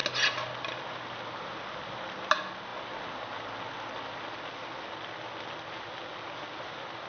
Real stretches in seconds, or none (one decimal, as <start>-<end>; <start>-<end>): 0.0-7.1